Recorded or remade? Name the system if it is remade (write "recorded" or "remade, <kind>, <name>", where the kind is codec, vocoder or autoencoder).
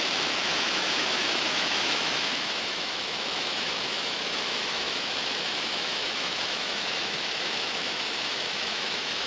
remade, autoencoder, DAC-VAE